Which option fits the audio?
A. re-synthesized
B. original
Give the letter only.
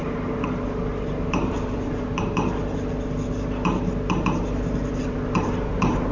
B